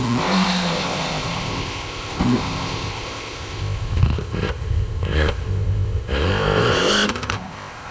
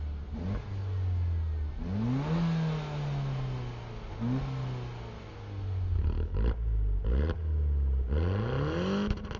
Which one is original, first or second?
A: second